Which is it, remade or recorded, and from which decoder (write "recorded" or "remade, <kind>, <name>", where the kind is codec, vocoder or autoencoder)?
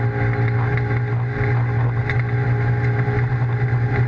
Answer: recorded